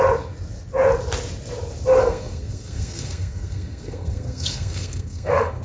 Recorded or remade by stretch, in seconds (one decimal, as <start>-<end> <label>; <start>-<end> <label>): 0.0-2.0 recorded; 2.0-5.6 remade